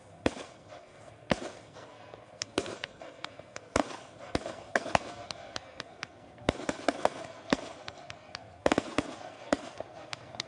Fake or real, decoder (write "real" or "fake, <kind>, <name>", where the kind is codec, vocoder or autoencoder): fake, codec, SNAC